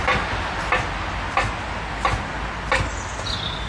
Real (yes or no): yes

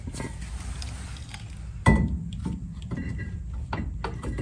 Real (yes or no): no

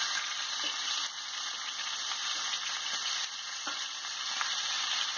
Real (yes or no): yes